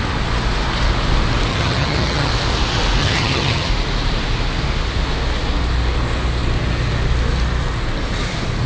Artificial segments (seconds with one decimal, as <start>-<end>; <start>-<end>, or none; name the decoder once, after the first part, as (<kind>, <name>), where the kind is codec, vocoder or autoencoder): 1.5-2.3 (vocoder, HiFi-GAN); 3.0-3.7